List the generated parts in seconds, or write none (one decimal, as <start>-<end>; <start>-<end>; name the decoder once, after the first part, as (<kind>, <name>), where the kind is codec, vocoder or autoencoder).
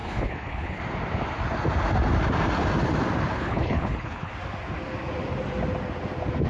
0.0-0.8 (codec, HILCodec); 3.3-4.3